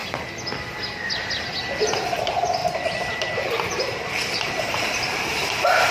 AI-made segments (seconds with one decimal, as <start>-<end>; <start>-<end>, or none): 2.6-5.9